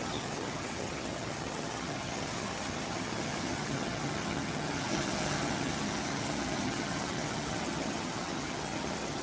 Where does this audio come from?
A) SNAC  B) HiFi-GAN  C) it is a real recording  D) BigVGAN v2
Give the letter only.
B